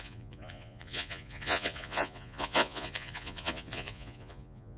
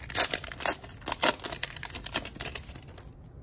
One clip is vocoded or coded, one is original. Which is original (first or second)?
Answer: second